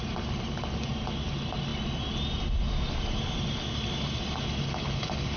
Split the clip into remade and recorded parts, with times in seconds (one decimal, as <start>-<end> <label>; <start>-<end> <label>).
0.0-5.4 recorded